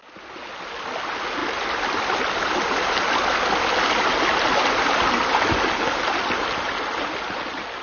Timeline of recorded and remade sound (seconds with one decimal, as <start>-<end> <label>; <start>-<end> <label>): 0.0-7.8 recorded